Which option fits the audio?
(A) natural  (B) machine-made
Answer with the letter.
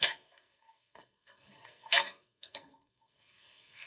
B